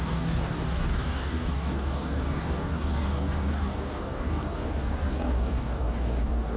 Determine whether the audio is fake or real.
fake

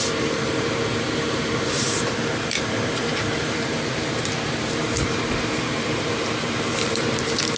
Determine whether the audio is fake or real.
fake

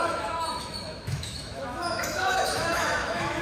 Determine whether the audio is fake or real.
fake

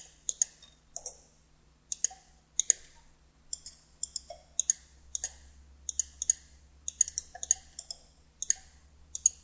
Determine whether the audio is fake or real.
real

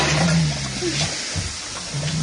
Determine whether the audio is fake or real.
fake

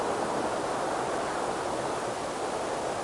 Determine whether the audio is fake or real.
real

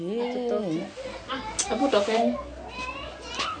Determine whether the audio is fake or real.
real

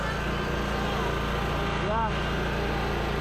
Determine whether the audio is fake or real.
real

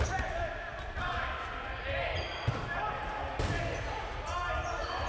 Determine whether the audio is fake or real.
real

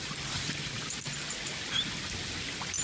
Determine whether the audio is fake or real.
fake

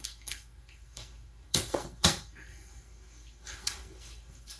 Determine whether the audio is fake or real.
fake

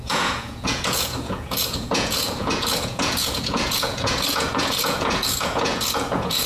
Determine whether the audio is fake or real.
fake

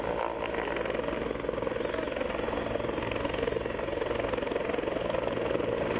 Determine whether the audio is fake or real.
real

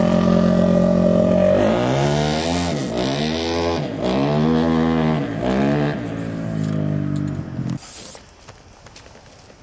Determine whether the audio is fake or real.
real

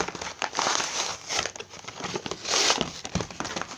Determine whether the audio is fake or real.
real